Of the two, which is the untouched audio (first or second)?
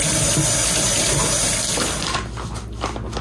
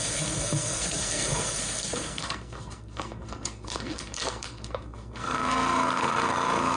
first